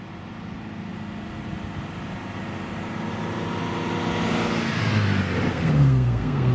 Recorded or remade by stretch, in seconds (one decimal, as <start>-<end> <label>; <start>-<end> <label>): 0.0-5.5 recorded; 5.5-6.5 remade